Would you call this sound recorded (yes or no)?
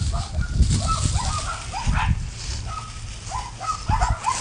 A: yes